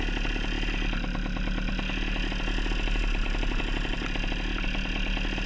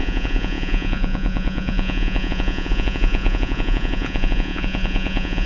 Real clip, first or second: first